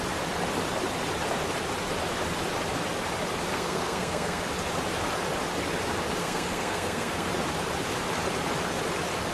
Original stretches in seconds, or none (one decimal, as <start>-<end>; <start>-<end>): 0.0-3.5; 4.4-6.2; 7.3-9.3